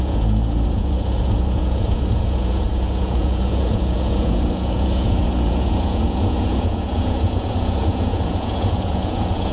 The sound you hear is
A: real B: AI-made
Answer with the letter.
B